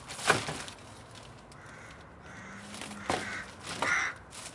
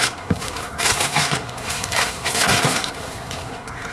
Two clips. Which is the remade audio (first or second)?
second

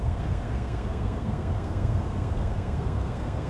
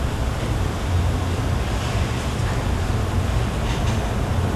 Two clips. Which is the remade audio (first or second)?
first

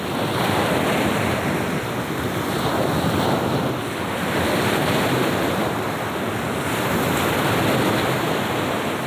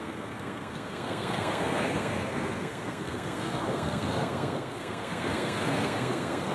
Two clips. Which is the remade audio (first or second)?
second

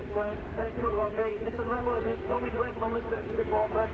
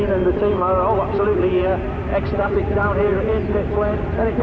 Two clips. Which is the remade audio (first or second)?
first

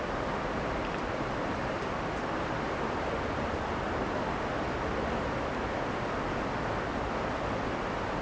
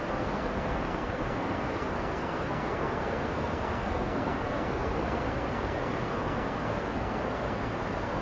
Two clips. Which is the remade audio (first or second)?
second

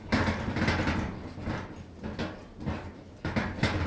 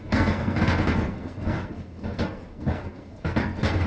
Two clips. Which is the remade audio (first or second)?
second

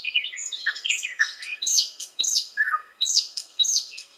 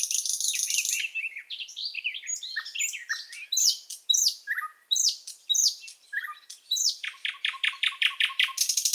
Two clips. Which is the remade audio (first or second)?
first